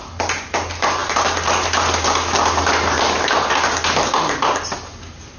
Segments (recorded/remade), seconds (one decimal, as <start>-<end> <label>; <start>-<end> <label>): 0.0-5.4 recorded